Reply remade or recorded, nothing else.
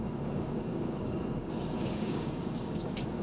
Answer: remade